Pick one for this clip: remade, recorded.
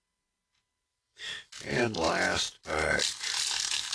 recorded